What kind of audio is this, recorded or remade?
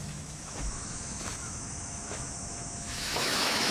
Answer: remade